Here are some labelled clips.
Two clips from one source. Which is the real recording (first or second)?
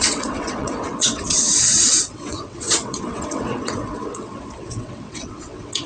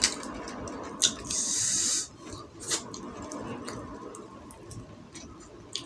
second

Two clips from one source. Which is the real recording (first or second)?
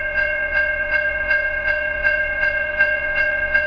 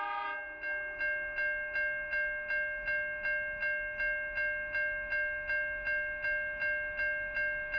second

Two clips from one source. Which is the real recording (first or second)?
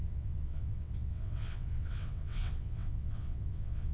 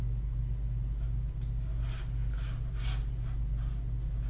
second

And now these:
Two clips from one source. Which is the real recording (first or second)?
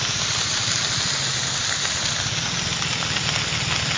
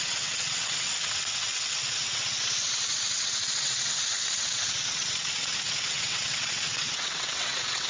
first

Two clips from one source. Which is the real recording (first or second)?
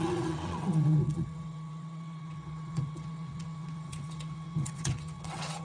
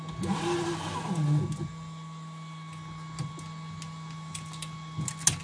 second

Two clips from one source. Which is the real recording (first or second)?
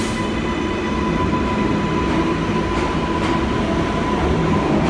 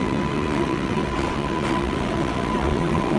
first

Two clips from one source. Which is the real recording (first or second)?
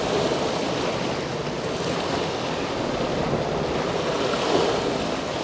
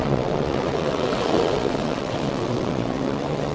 first